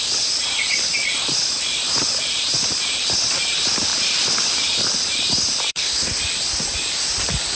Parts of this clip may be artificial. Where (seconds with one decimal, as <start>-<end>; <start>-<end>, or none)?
5.7-6.2